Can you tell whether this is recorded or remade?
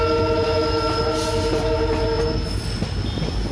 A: recorded